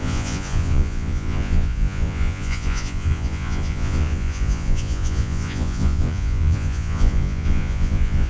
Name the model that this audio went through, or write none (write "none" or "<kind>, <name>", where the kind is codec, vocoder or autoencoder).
vocoder, Vocos